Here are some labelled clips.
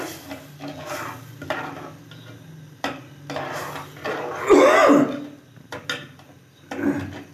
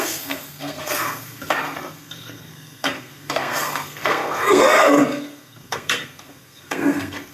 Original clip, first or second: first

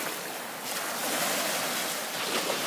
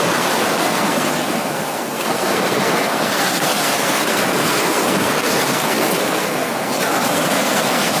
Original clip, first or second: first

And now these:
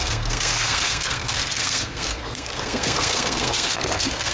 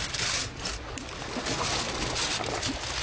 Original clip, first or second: second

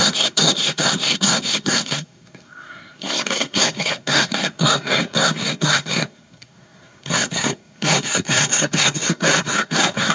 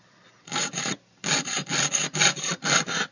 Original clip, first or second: second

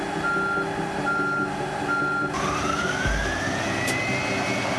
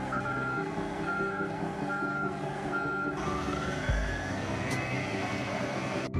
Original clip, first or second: first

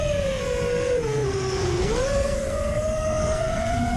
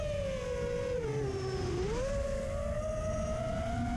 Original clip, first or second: second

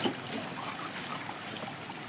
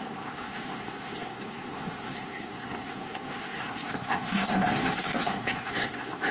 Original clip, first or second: first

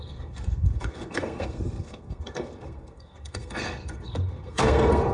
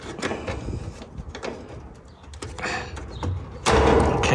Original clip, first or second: second